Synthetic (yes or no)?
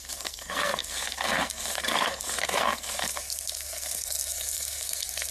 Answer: yes